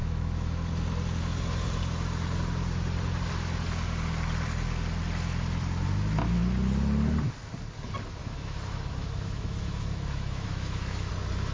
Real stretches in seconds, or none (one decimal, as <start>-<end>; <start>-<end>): 0.5-8.2; 11.1-11.5